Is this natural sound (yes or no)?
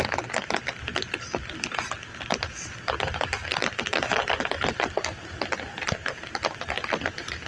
yes